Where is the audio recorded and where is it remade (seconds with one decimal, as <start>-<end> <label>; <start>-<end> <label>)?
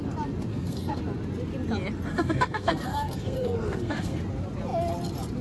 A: 0.0-0.5 recorded; 0.5-1.0 remade; 1.0-2.1 recorded; 2.1-4.2 remade; 4.2-5.4 recorded